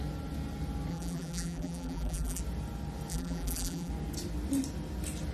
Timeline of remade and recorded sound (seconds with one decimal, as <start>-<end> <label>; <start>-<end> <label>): 0.0-0.9 recorded; 0.9-2.4 remade; 2.4-3.1 recorded; 3.1-3.9 remade; 3.9-5.3 recorded